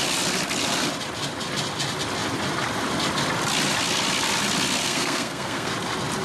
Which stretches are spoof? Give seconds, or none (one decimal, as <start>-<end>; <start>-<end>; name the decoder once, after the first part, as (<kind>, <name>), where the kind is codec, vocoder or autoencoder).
4.8-5.7 (codec, SNAC)